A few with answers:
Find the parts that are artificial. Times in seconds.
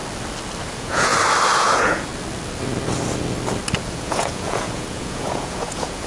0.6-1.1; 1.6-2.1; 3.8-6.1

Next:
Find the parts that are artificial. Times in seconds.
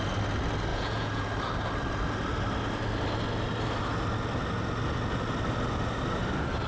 0.7-1.3